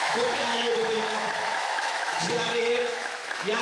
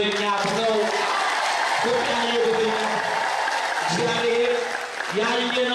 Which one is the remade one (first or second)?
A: first